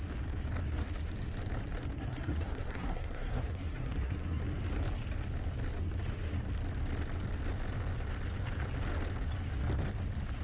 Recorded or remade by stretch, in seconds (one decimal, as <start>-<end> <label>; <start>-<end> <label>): 0.0-2.1 recorded; 2.1-4.4 remade; 4.4-10.4 recorded